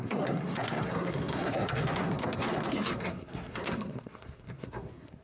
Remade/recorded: remade